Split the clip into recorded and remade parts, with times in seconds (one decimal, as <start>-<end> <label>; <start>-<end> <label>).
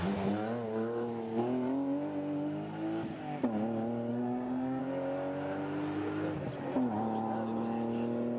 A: 0.0-4.1 recorded; 4.1-4.8 remade; 4.8-8.4 recorded